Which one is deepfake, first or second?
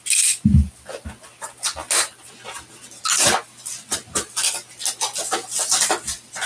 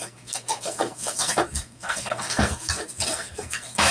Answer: second